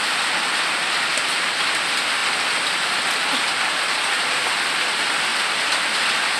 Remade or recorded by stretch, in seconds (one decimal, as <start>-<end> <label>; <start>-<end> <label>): 0.0-5.3 recorded; 5.3-5.9 remade; 5.9-6.4 recorded